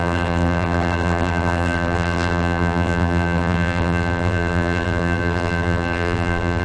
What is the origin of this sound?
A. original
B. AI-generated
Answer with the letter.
B